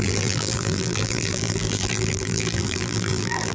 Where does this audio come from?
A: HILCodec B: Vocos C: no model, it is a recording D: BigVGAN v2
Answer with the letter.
D